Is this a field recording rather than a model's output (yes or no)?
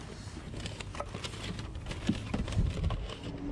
yes